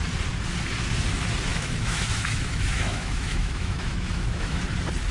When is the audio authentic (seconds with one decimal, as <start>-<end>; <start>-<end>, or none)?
0.0-1.5; 4.6-5.1